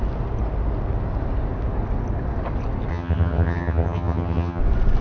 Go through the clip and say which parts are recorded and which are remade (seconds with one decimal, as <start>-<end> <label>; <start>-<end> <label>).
0.0-2.9 recorded; 2.9-4.6 remade; 4.6-5.0 recorded